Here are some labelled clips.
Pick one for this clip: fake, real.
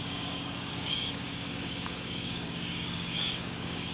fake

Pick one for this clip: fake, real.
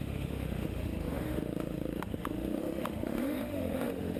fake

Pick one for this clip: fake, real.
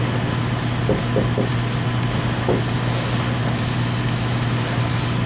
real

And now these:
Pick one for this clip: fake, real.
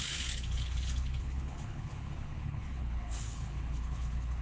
fake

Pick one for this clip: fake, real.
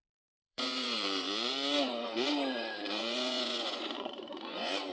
fake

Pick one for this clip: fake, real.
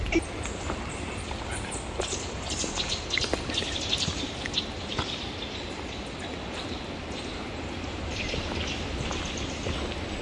real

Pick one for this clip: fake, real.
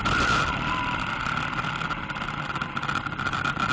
real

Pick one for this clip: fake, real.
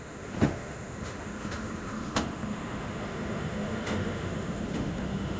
fake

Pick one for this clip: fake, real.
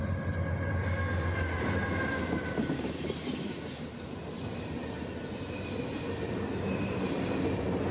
real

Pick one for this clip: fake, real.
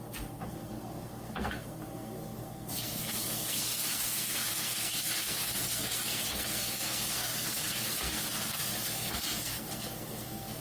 fake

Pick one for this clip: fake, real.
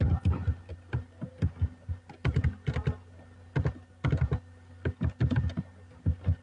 real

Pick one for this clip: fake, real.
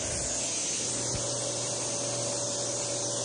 real